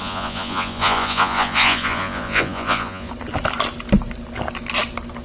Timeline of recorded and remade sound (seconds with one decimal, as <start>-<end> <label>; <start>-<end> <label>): 0.0-3.1 remade; 3.1-5.2 recorded